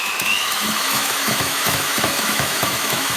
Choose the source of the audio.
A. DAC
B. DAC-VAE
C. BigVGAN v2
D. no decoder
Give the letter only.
B